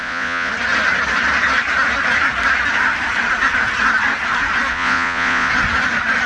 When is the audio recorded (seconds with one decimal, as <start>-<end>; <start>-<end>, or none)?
0.5-4.7; 5.5-6.3